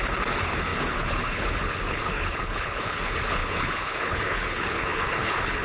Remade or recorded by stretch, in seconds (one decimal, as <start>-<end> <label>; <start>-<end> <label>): 0.0-5.6 remade